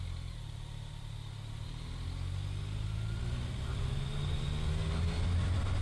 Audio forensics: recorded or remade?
recorded